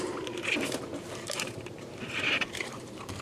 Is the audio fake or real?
fake